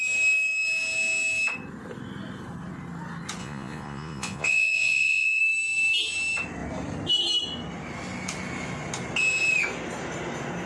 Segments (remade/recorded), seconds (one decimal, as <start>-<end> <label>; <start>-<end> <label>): 0.0-3.4 recorded; 3.4-5.4 remade; 5.4-10.7 recorded